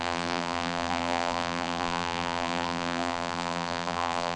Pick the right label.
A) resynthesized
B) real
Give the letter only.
A